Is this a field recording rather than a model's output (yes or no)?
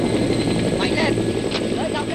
yes